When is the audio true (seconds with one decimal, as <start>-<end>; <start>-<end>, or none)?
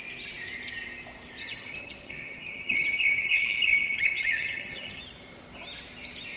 0.0-1.4; 5.0-6.4